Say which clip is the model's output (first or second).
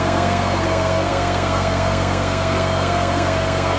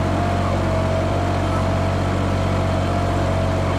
first